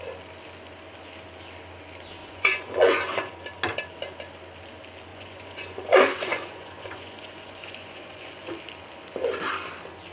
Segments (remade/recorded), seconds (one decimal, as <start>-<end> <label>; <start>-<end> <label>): 0.0-2.2 recorded; 2.2-3.3 remade; 3.3-5.1 recorded; 5.1-8.5 remade; 8.5-10.1 recorded